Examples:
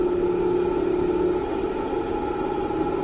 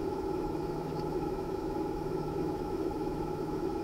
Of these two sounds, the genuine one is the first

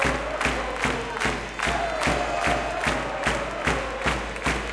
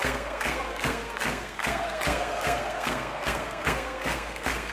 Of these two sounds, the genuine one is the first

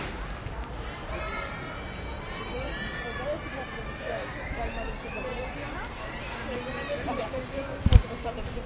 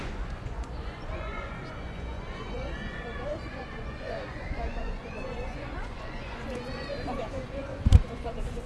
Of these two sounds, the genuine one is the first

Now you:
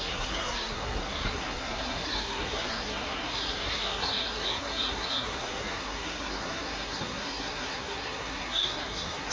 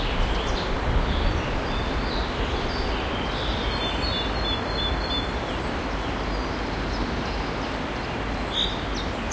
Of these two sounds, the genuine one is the second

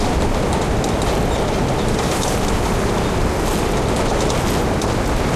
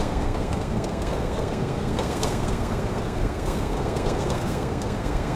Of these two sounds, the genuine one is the first